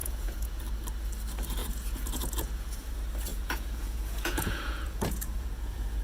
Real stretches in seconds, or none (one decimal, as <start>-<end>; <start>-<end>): 0.6-1.6; 2.9-3.3